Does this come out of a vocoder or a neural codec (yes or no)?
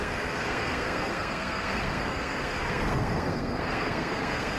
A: yes